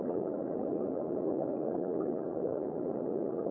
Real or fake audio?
fake